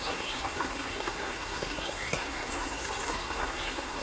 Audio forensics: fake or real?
fake